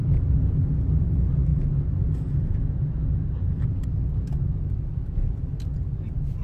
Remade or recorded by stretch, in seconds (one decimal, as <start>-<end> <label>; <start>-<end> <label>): 0.0-6.4 recorded